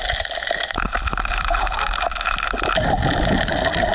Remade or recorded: recorded